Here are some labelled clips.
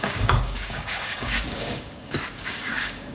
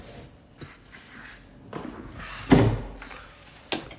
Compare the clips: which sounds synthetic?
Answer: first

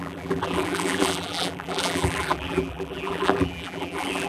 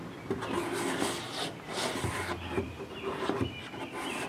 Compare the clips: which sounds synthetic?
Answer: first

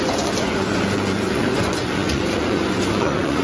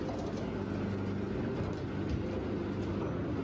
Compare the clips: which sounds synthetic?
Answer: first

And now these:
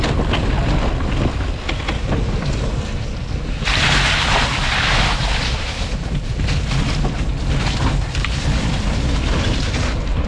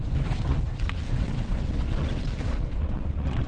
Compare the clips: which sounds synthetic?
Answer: second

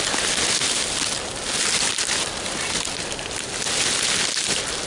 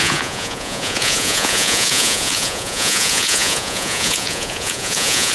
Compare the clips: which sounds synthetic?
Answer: second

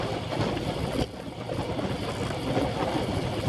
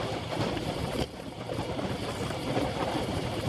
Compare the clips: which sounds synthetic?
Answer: second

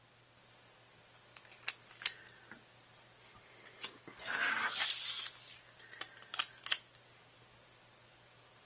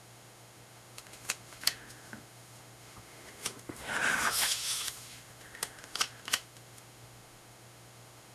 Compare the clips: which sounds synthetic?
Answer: second